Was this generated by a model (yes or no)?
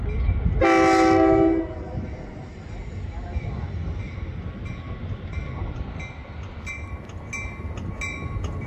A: no